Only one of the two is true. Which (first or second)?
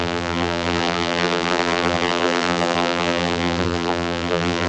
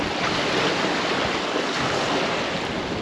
second